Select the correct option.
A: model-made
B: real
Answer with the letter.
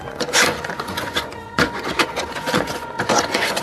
A